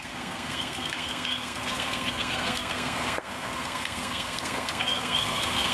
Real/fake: fake